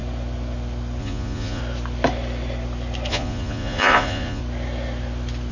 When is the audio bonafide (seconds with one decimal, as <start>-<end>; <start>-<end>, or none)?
0.0-1.0; 1.6-3.1; 4.4-5.5